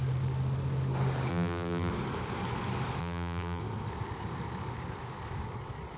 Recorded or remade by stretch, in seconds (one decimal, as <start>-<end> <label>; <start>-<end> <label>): 0.0-1.3 recorded; 1.3-1.9 remade; 1.9-3.0 recorded; 3.0-3.6 remade; 3.6-6.0 recorded